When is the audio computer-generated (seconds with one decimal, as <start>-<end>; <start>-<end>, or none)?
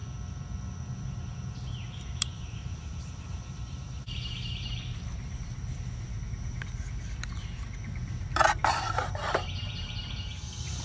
1.0-10.8